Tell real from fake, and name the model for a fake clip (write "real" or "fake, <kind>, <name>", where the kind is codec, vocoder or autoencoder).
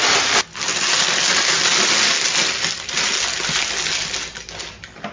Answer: real